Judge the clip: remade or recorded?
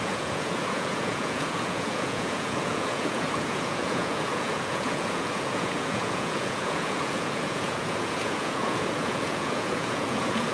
remade